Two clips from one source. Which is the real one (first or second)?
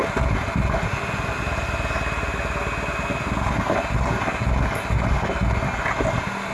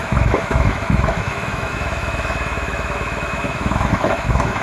first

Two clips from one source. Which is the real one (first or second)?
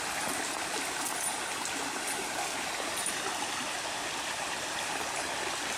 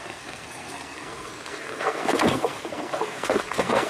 first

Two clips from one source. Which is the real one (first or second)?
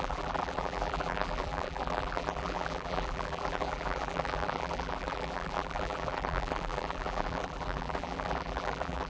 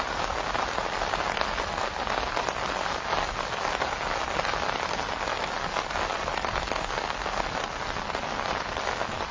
second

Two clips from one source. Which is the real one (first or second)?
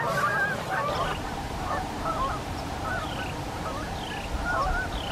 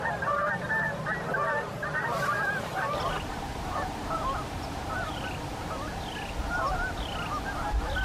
first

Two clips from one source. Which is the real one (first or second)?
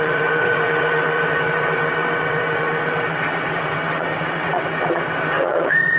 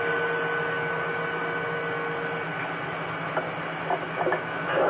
second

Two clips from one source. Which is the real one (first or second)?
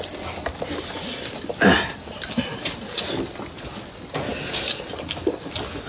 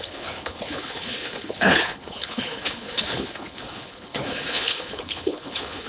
first